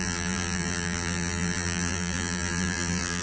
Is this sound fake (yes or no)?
yes